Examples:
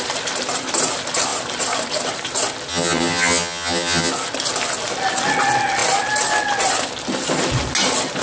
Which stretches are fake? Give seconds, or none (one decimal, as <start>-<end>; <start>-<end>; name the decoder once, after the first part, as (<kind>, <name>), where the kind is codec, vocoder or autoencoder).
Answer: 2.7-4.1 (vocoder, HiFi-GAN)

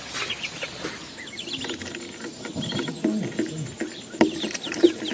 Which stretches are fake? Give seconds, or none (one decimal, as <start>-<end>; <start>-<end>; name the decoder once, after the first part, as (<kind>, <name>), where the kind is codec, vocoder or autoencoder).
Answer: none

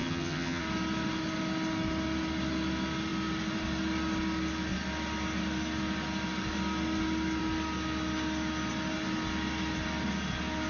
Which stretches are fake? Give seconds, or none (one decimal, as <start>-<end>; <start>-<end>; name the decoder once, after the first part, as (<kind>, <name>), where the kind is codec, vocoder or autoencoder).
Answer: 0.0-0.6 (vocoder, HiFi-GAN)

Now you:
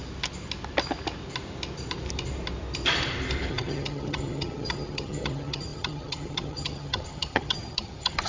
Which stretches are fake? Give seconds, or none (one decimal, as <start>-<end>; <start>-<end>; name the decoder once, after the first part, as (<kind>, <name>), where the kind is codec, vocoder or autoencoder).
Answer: 3.5-8.3 (vocoder, HiFi-GAN)

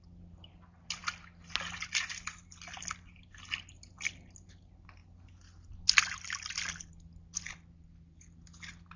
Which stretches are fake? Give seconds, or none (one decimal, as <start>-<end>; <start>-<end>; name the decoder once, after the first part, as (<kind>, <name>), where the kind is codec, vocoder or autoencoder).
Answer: none

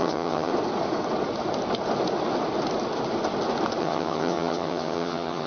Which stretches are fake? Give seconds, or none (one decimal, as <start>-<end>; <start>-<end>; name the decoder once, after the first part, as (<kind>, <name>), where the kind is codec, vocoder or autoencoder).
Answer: 0.0-0.5 (vocoder, HiFi-GAN); 3.8-5.5